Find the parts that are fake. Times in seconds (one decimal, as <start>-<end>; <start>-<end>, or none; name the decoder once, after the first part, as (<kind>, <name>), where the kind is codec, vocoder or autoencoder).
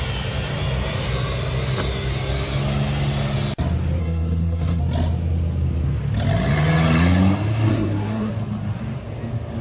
4.0-4.8 (codec, SNAC); 7.7-8.3